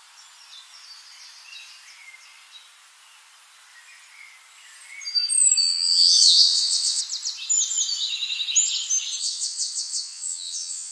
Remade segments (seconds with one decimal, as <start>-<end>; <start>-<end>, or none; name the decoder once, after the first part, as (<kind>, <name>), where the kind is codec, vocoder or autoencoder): 5.6-7.0 (vocoder, WaveNeXt); 9.2-10.9